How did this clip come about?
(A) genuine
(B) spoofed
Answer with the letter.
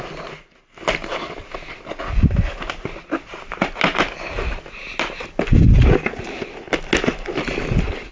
A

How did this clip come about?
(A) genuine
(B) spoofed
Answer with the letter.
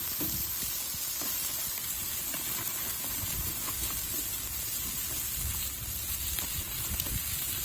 A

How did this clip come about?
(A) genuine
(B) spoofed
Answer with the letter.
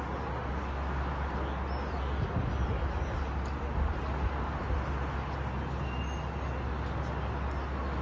A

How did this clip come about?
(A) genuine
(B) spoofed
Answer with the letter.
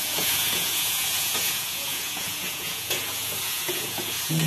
B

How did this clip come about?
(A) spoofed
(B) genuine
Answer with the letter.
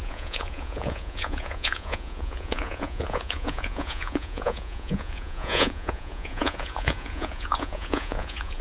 A